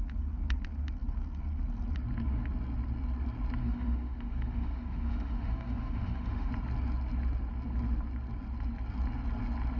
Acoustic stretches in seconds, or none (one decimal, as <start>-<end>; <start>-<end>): 0.0-3.6; 6.5-9.8